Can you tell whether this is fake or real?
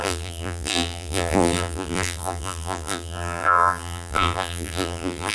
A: fake